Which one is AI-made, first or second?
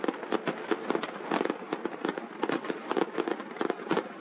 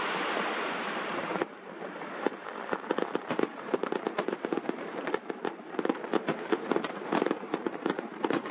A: second